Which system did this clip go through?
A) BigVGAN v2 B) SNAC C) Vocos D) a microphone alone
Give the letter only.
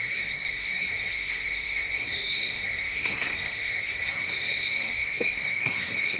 B